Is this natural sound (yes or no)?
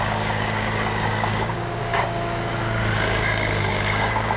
no